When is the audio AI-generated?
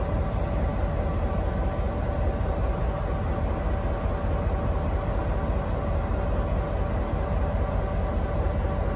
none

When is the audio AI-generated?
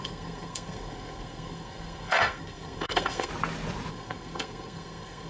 0.0-3.3 (codec, SNAC); 3.9-5.3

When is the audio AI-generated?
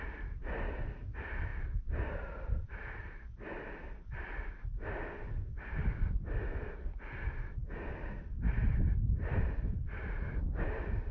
none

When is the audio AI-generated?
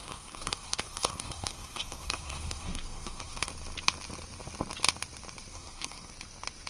0.0-3.5 (codec, SNAC); 5.5-6.1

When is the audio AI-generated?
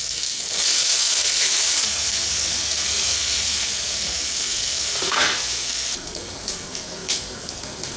0.0-8.0 (codec, SNAC)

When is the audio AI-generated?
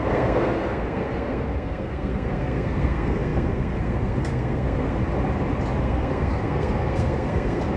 0.0-5.0 (codec, SNAC); 5.8-7.8